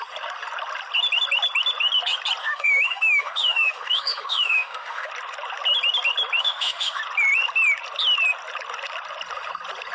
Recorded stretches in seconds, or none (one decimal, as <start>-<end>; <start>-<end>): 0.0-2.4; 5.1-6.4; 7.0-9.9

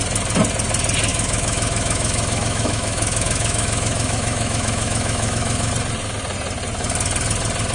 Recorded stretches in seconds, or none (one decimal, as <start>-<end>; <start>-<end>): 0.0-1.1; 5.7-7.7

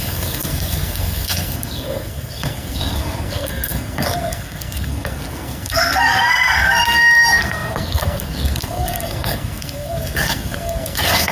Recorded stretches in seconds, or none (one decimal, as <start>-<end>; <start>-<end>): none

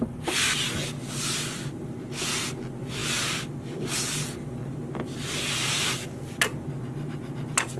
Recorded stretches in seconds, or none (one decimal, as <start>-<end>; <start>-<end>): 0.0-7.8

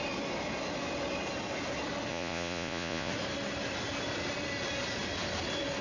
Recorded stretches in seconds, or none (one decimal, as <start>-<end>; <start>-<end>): 0.0-2.1; 3.1-5.8